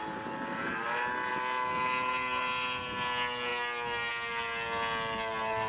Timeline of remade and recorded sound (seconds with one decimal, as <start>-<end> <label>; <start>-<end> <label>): 0.0-5.7 recorded